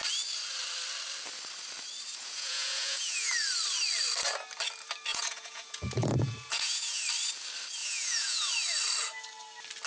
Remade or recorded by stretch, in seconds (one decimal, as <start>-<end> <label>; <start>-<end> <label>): 0.0-2.2 recorded; 2.2-3.3 remade; 3.3-5.1 recorded; 5.1-7.0 remade; 7.0-7.8 recorded; 7.8-8.5 remade; 8.5-9.9 recorded